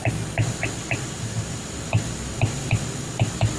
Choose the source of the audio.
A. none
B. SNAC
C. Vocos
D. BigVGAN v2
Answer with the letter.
A